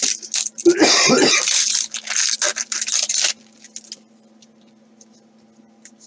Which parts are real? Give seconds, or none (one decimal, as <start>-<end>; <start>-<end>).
0.0-2.5; 3.3-6.1